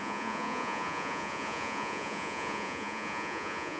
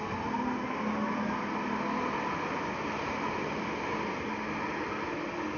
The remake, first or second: first